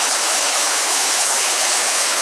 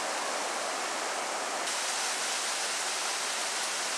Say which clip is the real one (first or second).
second